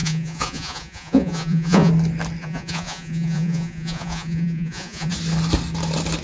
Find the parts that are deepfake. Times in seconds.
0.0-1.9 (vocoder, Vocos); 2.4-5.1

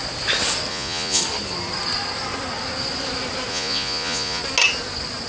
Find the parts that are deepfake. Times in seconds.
0.7-1.2 (vocoder, Vocos); 3.5-4.4

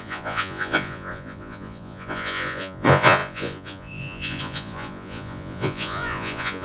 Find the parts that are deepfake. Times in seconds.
0.0-6.6 (vocoder, Vocos)

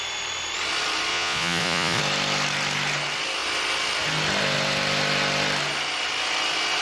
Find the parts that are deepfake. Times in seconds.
1.1-2.0 (vocoder, Vocos)

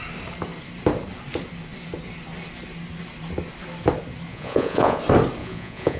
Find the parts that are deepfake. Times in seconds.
4.3-5.0 (vocoder, Vocos); 5.4-6.0

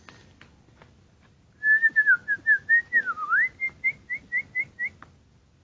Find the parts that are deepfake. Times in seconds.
none

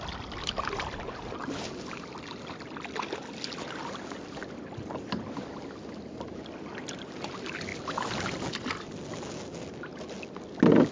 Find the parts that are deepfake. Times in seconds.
none

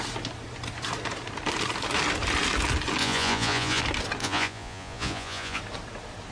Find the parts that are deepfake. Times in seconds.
3.0-3.8 (vocoder, Vocos); 4.2-5.6